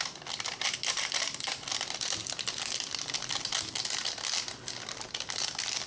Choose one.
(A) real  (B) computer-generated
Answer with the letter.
A